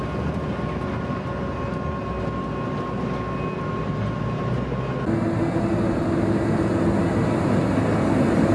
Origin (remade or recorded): recorded